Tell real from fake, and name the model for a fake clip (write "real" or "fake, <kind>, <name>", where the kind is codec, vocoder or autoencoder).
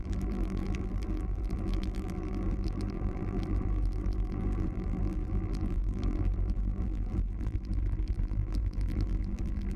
fake, vocoder, BigVGAN v2